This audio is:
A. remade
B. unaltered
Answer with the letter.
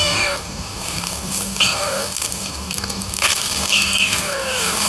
A